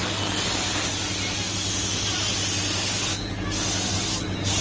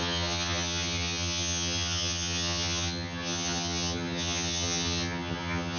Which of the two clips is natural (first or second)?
first